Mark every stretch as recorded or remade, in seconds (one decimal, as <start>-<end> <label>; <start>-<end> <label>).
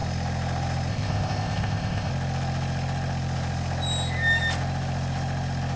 0.0-0.9 recorded; 0.9-2.1 remade; 2.1-5.8 recorded